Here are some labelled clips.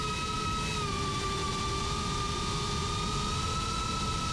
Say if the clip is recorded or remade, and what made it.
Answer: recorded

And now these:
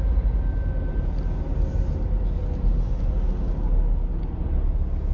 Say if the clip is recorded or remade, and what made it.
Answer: recorded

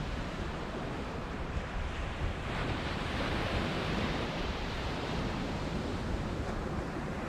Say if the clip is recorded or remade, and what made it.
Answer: remade, vocoder, BigVGAN v2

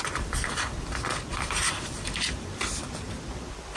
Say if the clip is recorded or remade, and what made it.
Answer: remade, vocoder, BigVGAN v2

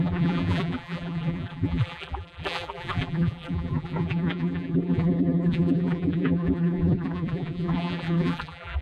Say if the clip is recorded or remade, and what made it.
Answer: remade, vocoder, BigVGAN v2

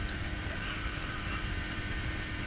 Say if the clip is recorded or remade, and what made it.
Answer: remade, vocoder, BigVGAN v2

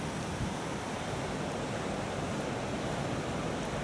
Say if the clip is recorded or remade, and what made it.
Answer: recorded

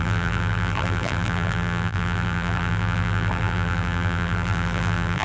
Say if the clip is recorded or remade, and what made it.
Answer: remade, vocoder, BigVGAN v2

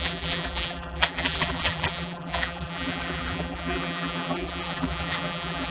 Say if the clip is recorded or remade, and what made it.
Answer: remade, vocoder, BigVGAN v2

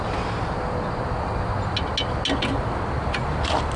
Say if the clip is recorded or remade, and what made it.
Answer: recorded